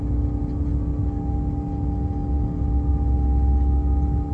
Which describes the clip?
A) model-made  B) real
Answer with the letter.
B